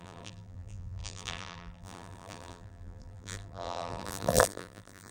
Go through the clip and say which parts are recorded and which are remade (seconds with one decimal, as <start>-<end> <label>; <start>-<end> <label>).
0.0-5.1 remade